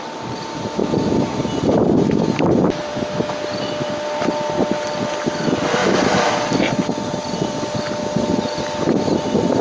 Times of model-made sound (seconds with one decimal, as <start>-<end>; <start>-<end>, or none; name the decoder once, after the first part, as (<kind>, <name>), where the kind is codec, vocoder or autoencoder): none